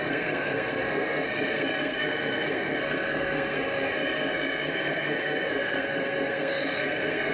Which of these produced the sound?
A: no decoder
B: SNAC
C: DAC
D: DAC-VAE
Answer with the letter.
B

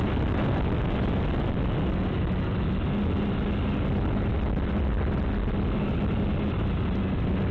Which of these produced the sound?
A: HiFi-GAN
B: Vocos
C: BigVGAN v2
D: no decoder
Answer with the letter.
D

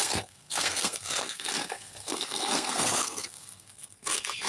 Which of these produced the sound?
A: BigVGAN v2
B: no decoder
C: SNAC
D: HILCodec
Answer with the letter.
C